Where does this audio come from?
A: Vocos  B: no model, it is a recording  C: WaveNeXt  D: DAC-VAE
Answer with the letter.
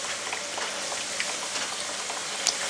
B